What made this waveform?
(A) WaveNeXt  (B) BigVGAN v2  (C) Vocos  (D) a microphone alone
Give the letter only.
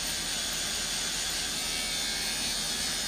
D